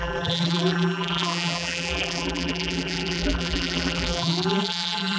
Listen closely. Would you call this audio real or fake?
fake